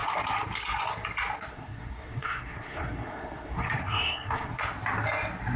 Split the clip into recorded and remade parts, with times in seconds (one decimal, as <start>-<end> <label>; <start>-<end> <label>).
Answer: 0.0-1.5 recorded; 1.5-4.6 remade; 4.6-5.6 recorded